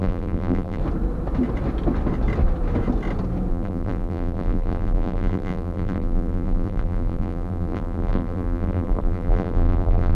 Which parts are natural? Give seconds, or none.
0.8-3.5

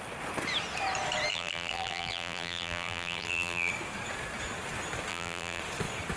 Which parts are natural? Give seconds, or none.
0.0-1.3; 3.7-5.1; 5.6-6.2

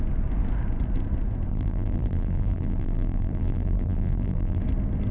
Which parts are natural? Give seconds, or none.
0.0-1.5; 4.6-5.1

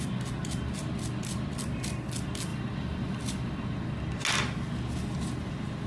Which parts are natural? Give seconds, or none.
0.0-5.9

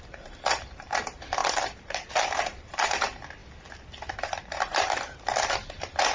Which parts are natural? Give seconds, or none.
3.4-4.1

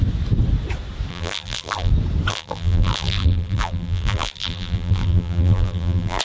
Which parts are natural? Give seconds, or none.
0.0-1.1; 1.9-2.3

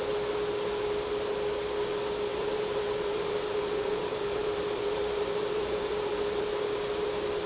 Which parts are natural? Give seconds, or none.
0.0-2.3; 6.6-7.5